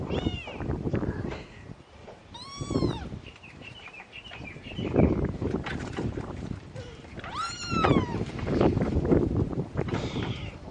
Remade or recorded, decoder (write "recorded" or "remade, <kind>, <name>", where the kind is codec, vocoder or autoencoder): remade, vocoder, BigVGAN v2